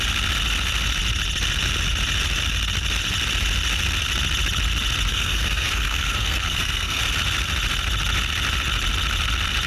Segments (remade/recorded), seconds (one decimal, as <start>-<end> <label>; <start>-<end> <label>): 0.0-5.1 recorded; 5.1-7.0 remade; 7.0-9.7 recorded